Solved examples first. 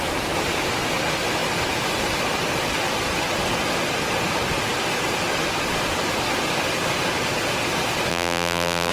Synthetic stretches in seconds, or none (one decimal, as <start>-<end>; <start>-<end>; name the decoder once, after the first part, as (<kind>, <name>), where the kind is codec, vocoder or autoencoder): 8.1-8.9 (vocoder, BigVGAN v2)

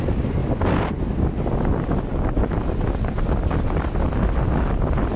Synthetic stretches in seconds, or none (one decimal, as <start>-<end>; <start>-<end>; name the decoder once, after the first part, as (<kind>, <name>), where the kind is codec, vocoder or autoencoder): none

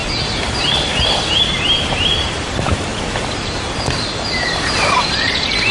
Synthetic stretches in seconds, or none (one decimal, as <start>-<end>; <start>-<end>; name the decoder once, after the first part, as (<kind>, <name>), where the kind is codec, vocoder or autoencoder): 1.4-2.9 (vocoder, BigVGAN v2); 4.5-5.7